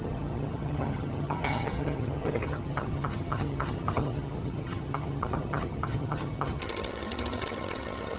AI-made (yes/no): yes